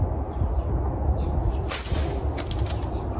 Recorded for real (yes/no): yes